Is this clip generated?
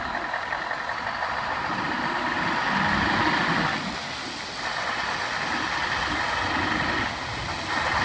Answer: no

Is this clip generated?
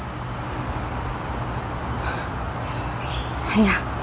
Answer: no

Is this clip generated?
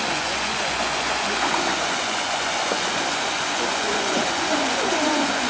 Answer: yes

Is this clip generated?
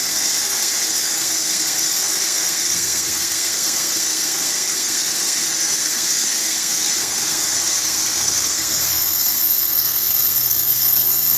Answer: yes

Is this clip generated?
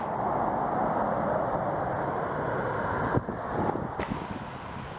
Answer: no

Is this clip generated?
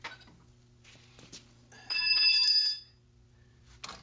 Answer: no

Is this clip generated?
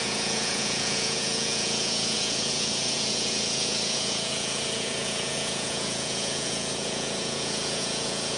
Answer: yes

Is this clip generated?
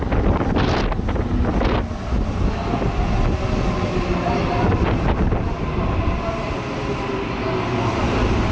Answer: no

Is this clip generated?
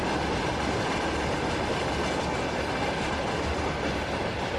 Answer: no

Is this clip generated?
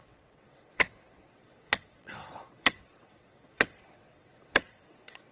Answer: yes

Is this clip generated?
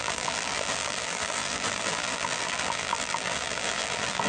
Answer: yes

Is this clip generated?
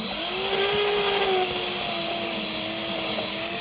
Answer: no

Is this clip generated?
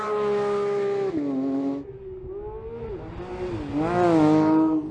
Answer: no